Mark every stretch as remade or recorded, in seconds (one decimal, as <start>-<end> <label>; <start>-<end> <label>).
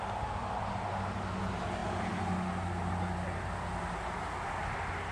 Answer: 0.0-5.1 recorded